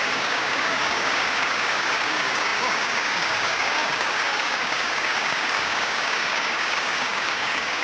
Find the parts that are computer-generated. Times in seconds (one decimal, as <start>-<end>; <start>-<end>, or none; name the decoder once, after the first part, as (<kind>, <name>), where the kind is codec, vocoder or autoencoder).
0.0-7.8 (codec, DAC)